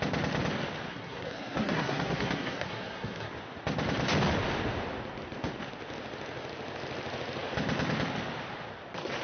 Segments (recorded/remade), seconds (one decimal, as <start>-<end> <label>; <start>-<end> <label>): 0.0-0.9 recorded; 0.9-3.3 remade; 3.3-9.2 recorded